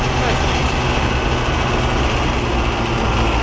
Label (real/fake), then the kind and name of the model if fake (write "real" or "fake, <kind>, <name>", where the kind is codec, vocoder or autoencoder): real